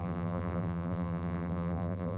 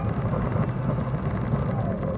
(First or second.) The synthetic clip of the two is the first